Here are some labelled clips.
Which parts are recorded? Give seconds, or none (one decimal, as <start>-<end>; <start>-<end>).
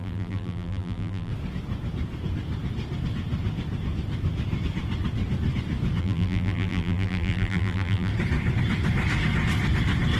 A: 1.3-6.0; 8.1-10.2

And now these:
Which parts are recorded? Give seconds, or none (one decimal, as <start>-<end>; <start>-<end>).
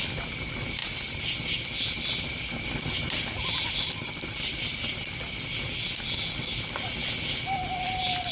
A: 0.0-8.3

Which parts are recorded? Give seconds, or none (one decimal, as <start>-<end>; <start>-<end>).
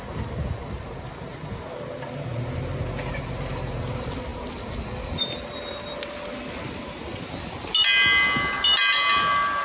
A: 0.0-9.6